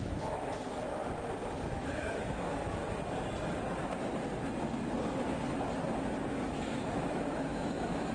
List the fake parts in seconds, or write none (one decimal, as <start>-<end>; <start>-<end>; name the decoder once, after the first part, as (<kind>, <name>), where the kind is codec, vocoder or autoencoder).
0.0-1.0 (autoencoder, DAC-VAE); 1.7-2.8; 6.5-8.1